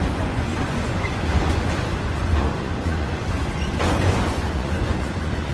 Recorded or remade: remade